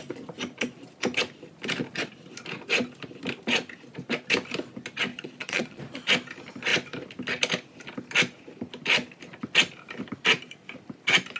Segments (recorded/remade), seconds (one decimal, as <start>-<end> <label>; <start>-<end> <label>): 0.0-5.1 recorded; 5.1-5.8 remade; 5.8-11.4 recorded